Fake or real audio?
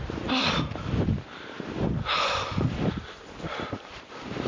fake